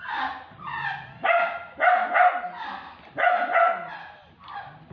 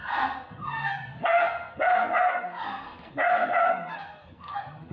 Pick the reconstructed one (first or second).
second